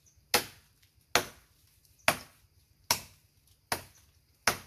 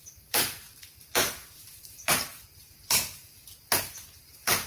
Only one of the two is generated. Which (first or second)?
second